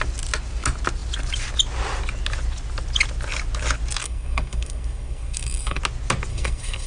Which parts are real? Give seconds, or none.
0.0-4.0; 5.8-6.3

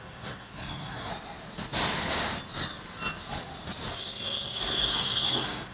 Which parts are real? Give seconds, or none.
1.1-3.9

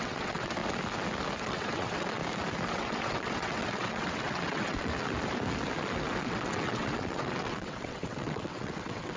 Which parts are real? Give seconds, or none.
0.6-1.4; 2.2-2.7; 4.9-6.2